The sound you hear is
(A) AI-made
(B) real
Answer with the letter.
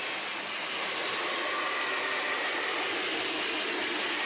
B